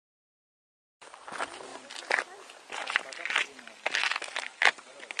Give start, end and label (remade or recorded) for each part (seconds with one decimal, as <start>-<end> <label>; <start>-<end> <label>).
0.0-5.2 recorded

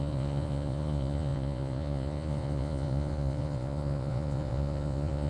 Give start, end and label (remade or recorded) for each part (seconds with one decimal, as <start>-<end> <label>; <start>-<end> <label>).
0.0-5.3 remade

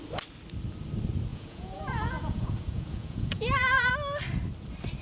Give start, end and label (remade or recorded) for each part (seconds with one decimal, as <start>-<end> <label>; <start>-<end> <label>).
0.0-1.3 recorded; 1.3-3.9 remade; 3.9-5.0 recorded

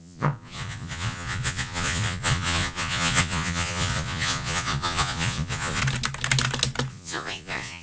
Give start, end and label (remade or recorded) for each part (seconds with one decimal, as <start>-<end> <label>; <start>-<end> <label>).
0.0-5.8 remade; 5.8-6.9 recorded; 6.9-7.8 remade

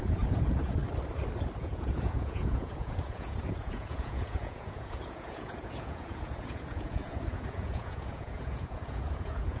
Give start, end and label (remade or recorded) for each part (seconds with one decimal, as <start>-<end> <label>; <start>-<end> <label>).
0.0-0.8 remade; 0.8-1.6 recorded; 1.6-9.6 remade